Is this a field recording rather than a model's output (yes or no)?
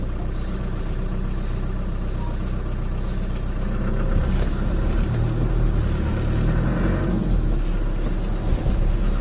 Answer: yes